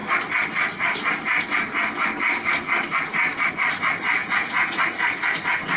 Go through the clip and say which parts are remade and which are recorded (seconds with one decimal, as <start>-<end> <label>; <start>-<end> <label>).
0.0-3.5 recorded; 3.5-5.8 remade